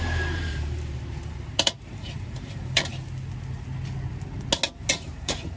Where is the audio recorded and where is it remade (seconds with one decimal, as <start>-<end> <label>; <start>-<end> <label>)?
0.0-2.9 remade; 2.9-4.9 recorded; 4.9-5.6 remade